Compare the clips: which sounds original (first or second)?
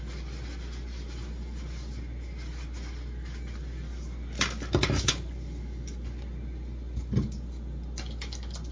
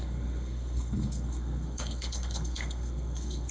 first